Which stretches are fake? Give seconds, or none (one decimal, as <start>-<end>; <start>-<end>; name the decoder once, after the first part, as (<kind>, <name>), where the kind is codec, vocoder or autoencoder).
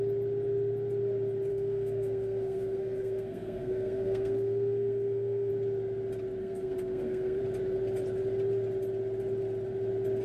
1.5-5.5 (codec, SNAC); 6.4-7.4